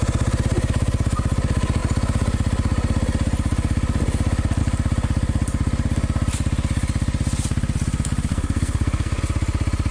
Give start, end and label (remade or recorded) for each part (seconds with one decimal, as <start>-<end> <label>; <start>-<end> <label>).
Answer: 0.0-8.3 recorded; 8.3-9.2 remade; 9.2-9.9 recorded